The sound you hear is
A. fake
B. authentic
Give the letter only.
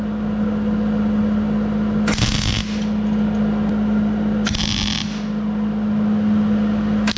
B